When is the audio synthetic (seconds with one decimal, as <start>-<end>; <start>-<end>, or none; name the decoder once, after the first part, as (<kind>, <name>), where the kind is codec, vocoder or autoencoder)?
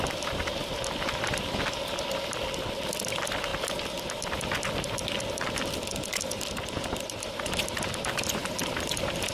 none